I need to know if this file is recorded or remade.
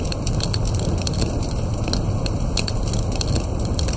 recorded